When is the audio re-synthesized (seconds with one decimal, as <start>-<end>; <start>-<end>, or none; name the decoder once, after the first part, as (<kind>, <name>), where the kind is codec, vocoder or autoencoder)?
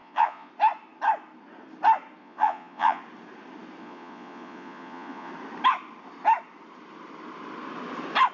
0.0-0.5 (vocoder, Vocos); 2.2-3.0; 3.8-5.3